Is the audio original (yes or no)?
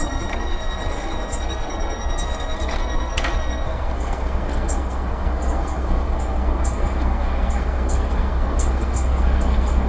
no